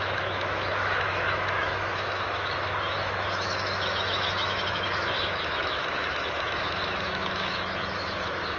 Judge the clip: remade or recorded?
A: remade